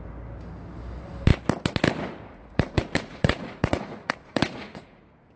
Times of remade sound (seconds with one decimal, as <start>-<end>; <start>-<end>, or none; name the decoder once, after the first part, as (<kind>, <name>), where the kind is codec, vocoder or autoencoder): 2.3-5.0 (vocoder, Vocos)

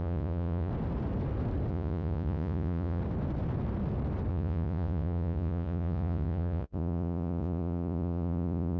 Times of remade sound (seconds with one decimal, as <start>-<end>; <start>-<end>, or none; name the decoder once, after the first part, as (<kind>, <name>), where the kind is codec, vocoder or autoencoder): 0.0-0.7 (vocoder, Vocos); 1.7-3.0; 4.3-8.8